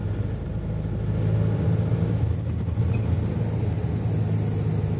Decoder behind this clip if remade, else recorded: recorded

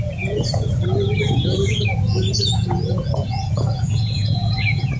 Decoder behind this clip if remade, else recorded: remade, vocoder, Vocos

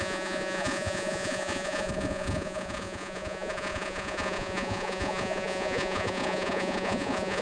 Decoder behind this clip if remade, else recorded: remade, vocoder, Vocos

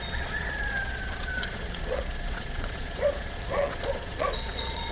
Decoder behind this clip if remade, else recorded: remade, vocoder, Vocos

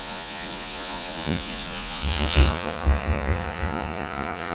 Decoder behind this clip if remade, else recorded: remade, vocoder, Vocos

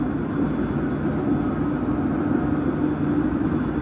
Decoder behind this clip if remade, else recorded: recorded